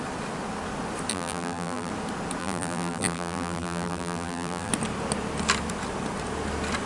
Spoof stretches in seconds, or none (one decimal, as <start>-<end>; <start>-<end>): 1.1-1.9; 2.4-4.7